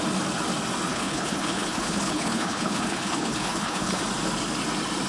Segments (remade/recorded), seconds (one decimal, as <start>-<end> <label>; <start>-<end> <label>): 0.0-0.9 recorded; 0.9-4.0 remade; 4.0-5.1 recorded